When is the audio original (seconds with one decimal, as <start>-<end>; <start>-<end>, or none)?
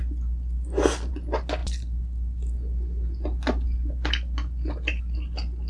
0.0-5.7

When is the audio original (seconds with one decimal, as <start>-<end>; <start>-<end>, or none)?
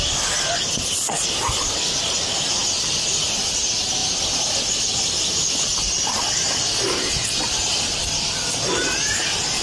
0.0-9.6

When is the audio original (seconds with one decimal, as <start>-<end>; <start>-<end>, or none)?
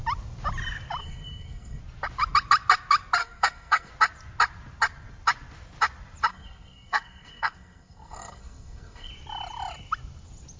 0.0-1.0; 1.8-3.2; 3.9-6.3; 9.1-10.6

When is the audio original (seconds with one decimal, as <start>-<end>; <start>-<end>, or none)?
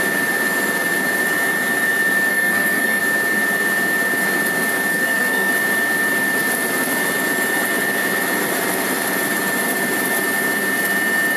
0.0-2.3; 3.0-4.9; 5.5-11.4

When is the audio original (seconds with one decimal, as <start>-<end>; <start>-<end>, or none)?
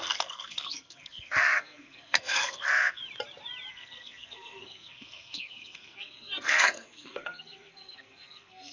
3.0-3.7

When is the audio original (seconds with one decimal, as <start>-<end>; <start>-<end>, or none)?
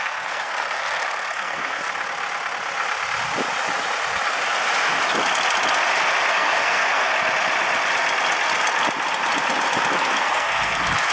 1.8-6.3; 7.1-9.9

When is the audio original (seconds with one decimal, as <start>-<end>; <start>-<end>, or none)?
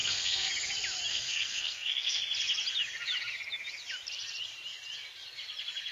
0.5-1.1; 2.2-5.9